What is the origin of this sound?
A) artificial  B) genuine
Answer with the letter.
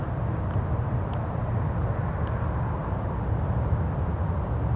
B